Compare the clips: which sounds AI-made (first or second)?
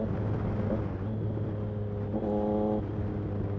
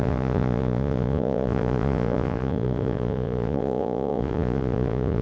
second